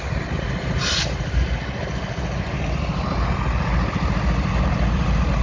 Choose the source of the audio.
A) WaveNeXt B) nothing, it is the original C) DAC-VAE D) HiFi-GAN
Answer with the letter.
B